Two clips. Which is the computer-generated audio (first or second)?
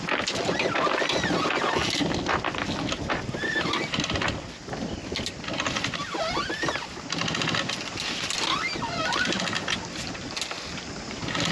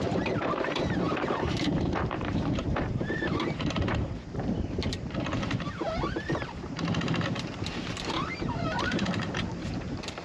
second